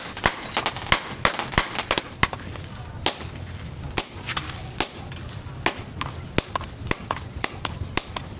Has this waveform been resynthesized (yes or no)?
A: no